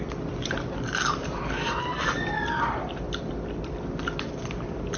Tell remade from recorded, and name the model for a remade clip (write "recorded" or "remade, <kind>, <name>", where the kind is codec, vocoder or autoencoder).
recorded